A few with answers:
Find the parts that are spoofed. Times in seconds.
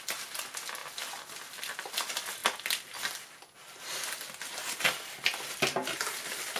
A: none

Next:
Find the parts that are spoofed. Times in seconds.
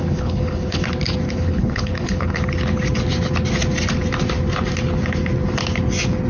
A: 0.0-0.8; 1.3-2.4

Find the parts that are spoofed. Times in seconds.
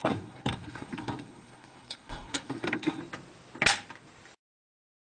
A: 0.0-3.0